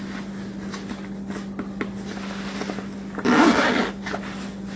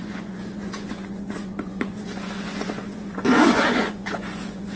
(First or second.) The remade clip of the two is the second